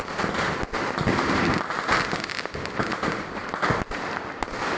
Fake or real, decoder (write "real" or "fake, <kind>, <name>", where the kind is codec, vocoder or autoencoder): real